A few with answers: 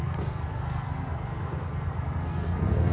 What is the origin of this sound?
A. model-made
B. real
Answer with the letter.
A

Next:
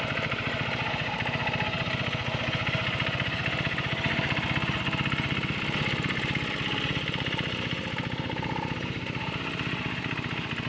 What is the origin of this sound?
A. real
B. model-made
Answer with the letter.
A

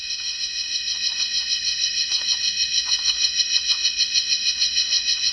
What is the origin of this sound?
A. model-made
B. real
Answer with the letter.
A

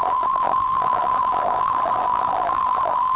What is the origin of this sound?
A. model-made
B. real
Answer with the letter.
A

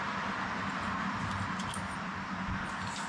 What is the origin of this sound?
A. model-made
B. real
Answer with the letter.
B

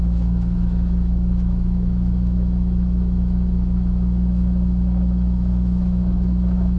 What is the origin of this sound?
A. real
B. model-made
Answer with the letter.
B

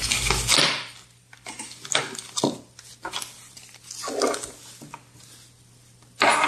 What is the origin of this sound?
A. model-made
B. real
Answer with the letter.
B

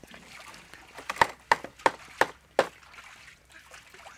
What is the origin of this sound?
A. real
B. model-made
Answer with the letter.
A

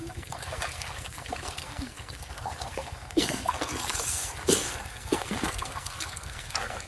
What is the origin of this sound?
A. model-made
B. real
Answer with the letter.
A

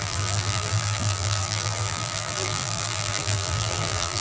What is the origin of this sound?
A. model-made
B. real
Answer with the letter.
A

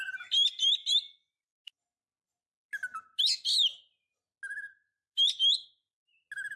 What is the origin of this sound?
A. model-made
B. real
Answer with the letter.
B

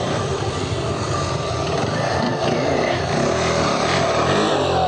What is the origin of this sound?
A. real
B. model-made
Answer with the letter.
A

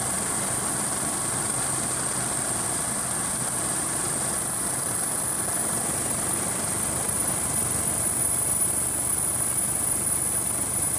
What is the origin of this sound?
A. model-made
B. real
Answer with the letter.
A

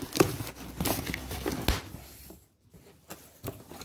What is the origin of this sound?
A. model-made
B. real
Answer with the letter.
B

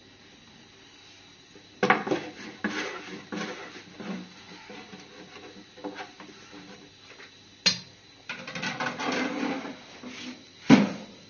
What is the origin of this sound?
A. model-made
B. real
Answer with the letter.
B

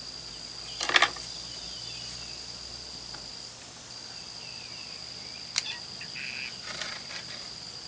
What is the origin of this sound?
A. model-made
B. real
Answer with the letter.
B